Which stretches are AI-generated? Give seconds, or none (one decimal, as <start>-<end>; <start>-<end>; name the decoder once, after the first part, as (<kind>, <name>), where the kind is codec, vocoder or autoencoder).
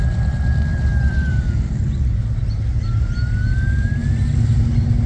0.7-1.5 (vocoder, BigVGAN v2)